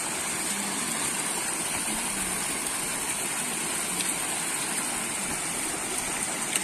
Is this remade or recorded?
recorded